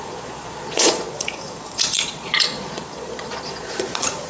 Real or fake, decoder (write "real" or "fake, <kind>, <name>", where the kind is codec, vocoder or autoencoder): fake, vocoder, Vocos